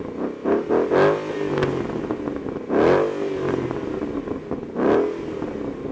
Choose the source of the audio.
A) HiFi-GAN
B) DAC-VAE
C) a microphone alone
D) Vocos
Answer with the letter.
C